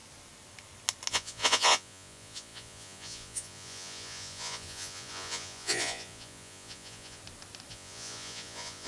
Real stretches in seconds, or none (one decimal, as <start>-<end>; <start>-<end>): 0.0-1.1; 7.2-7.7